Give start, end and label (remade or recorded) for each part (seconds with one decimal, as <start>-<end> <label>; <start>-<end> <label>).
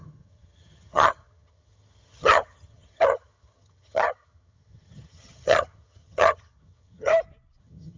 0.0-7.1 remade; 7.1-7.6 recorded; 7.6-8.0 remade